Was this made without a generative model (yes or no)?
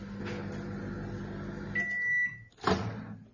yes